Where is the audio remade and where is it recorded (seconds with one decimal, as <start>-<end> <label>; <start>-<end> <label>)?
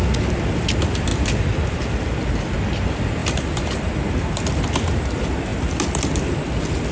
0.0-6.9 recorded